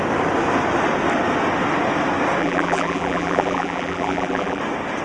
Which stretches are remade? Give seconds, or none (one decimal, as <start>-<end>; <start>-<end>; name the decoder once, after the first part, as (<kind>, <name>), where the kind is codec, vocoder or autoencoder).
2.4-4.6 (vocoder, BigVGAN v2)